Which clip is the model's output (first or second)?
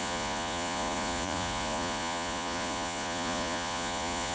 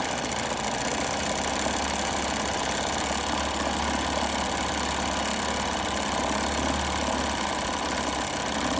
first